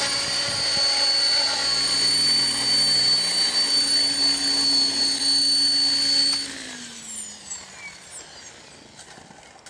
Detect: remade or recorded recorded